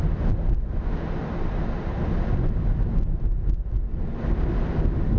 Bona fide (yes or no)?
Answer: yes